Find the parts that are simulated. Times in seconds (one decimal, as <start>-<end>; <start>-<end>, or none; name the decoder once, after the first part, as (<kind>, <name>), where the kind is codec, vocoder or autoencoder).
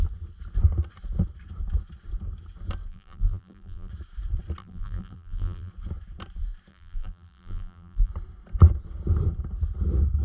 2.9-3.9 (vocoder, BigVGAN v2); 4.6-5.7; 6.7-8.1